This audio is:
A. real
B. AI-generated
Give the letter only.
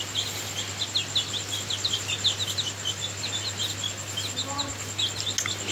A